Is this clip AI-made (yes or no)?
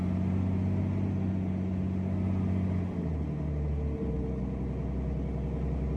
no